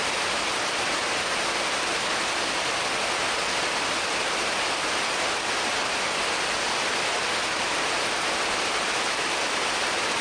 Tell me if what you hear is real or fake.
real